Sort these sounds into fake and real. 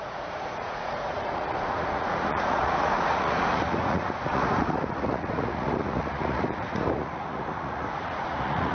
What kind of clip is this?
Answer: fake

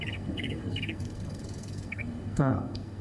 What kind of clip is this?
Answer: fake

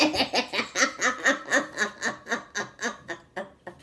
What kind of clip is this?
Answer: real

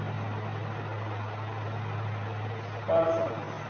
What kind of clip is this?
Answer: real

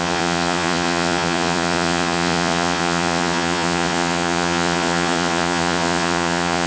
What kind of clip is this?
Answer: fake